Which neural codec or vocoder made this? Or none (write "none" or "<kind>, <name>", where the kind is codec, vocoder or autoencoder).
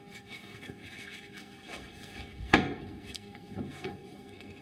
codec, SNAC